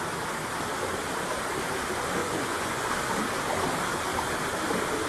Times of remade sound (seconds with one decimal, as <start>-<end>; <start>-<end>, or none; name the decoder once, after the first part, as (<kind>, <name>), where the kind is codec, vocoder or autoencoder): 2.2-2.9 (vocoder, Vocos)